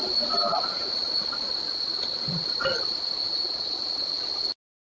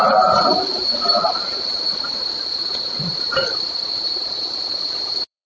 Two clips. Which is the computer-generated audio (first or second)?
second